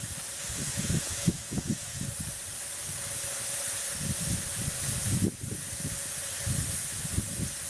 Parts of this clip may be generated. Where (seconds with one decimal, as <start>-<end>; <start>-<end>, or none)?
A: 0.4-2.0